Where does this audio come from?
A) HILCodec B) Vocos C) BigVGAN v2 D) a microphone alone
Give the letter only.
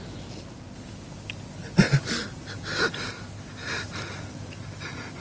D